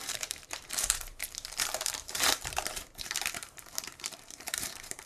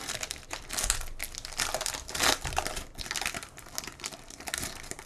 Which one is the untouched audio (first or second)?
second